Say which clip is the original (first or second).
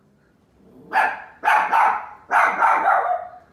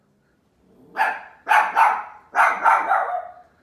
second